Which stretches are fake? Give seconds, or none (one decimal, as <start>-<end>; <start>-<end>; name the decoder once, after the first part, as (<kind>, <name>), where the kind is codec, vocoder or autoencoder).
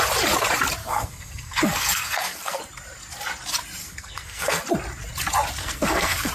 0.8-2.6 (codec, SNAC); 3.8-4.6; 5.6-6.3